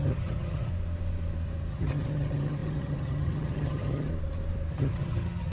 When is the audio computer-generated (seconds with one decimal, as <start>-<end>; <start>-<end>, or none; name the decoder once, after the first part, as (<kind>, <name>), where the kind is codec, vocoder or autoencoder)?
0.0-0.7 (vocoder, HiFi-GAN); 1.7-4.1; 4.7-5.5